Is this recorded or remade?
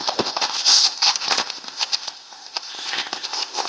remade